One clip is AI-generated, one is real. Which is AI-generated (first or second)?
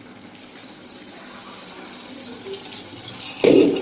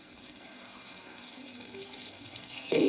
second